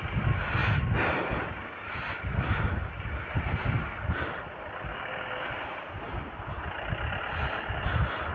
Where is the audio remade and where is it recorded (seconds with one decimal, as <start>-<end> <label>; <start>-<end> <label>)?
0.0-4.9 recorded; 4.9-5.5 remade; 5.5-8.3 recorded